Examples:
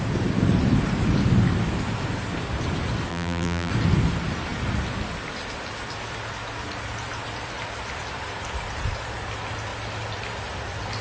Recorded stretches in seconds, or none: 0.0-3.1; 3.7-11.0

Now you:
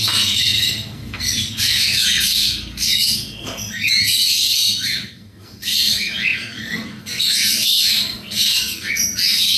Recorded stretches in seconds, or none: none

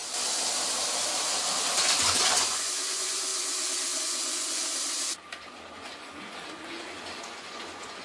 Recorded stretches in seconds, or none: 0.0-1.8; 3.3-4.0; 4.6-5.4

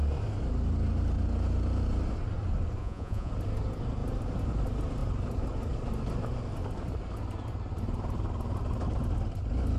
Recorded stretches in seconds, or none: 0.0-2.8; 3.3-9.8

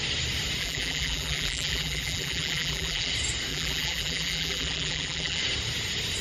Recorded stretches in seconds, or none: 0.0-0.6; 3.1-3.5; 5.4-6.2